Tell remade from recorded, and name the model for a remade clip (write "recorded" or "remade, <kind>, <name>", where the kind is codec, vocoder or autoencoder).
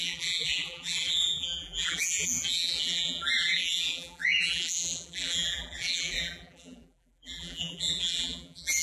remade, vocoder, BigVGAN v2